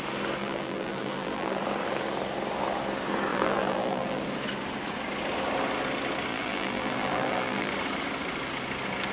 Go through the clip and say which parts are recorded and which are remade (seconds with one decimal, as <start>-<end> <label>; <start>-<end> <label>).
0.0-0.4 recorded; 0.4-1.6 remade; 1.6-3.3 recorded; 3.3-4.2 remade; 4.2-6.3 recorded; 6.3-7.7 remade; 7.7-9.1 recorded